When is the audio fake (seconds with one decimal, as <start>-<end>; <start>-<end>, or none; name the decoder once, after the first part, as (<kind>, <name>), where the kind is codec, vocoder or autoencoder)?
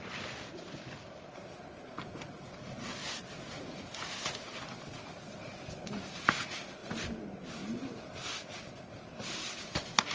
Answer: none